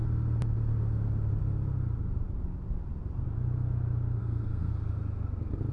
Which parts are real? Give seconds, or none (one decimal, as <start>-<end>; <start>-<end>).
0.0-4.2; 4.7-5.7